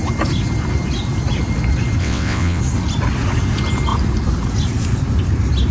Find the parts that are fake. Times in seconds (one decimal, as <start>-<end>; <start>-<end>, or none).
2.0-2.6